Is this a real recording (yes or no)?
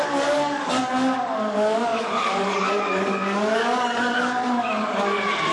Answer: no